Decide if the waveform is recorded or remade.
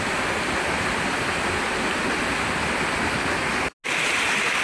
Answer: recorded